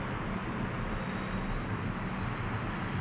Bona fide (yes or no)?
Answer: yes